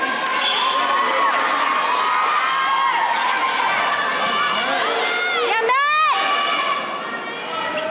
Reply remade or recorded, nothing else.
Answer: recorded